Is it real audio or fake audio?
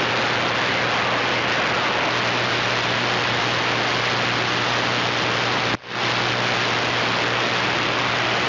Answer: real